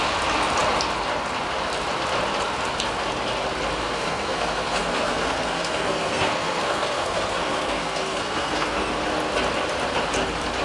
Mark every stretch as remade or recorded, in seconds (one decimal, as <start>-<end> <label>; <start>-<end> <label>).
0.0-3.8 recorded; 3.8-8.9 remade; 8.9-10.6 recorded